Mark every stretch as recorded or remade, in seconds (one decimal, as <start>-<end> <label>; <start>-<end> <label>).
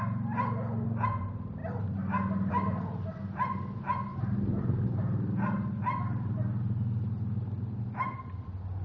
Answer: 0.0-8.8 recorded